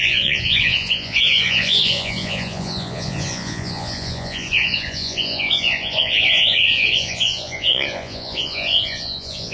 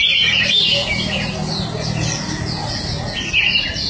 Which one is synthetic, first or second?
first